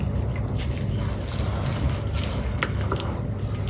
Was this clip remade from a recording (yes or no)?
no